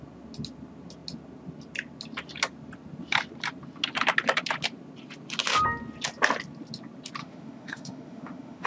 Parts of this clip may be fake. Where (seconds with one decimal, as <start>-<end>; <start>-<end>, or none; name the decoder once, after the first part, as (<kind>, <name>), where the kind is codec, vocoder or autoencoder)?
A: 7.2-8.7 (autoencoder, DAC-VAE)